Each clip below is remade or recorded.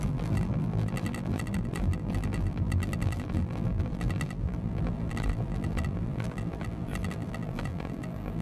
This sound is remade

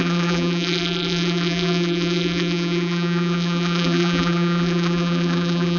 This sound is remade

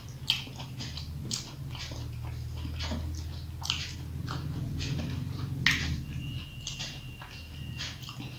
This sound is recorded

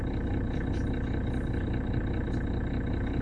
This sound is recorded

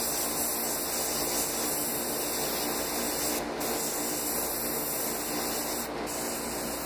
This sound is recorded